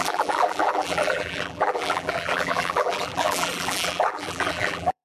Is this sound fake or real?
fake